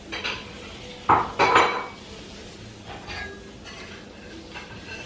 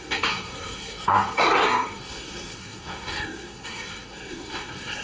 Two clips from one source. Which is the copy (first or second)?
second